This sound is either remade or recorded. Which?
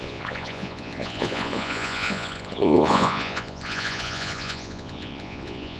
remade